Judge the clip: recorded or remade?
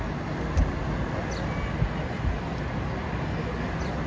recorded